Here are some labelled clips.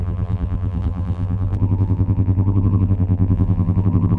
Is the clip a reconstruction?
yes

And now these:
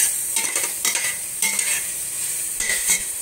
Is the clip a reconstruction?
yes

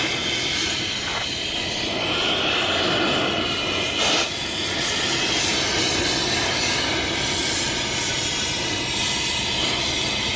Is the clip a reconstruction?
no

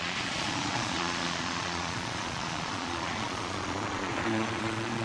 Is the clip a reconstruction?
yes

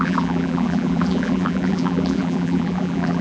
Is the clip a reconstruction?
yes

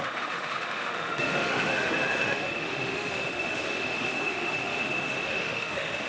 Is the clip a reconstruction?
yes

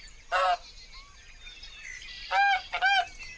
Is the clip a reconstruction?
no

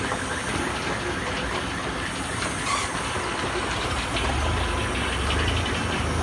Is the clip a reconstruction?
no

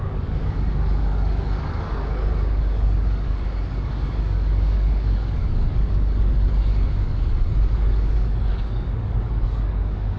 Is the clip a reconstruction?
yes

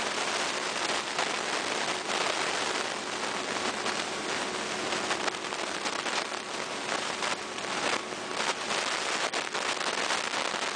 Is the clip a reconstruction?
no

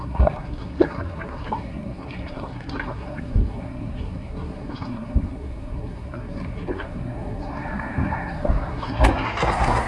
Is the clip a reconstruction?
yes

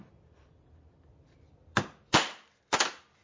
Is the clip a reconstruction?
yes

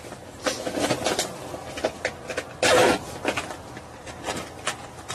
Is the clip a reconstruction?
no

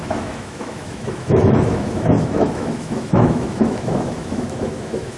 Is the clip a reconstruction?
yes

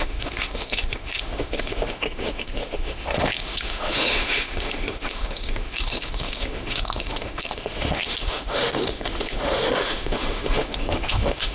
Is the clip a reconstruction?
yes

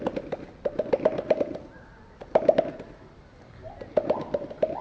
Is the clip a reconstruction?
no